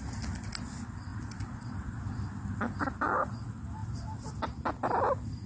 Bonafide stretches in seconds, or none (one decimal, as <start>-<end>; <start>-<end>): 0.0-5.5